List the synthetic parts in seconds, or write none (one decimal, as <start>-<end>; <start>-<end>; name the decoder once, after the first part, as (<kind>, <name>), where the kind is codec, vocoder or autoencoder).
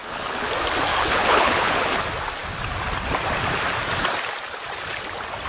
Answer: 0.0-0.5 (codec, HILCodec); 0.9-2.0